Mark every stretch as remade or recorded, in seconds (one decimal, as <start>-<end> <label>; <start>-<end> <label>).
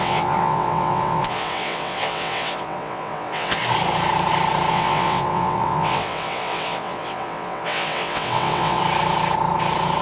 0.0-3.6 remade; 3.6-4.7 recorded; 4.7-8.8 remade; 8.8-10.0 recorded